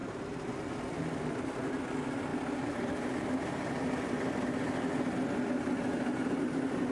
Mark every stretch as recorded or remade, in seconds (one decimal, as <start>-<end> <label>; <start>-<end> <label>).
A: 0.0-0.7 remade; 0.7-2.3 recorded; 2.3-4.7 remade; 4.7-6.9 recorded